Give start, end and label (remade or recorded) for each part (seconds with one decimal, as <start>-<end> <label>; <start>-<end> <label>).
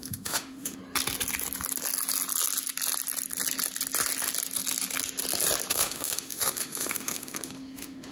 0.0-0.8 remade; 0.8-5.7 recorded; 5.7-8.1 remade